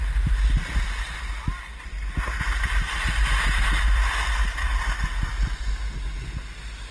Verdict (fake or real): real